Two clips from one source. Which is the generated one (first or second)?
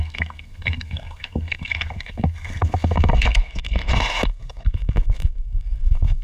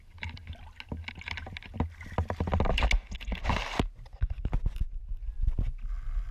first